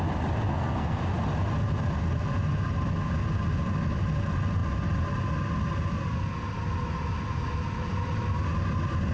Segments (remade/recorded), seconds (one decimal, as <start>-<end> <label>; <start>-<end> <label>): 0.0-0.5 recorded; 0.5-1.0 remade; 1.0-9.1 recorded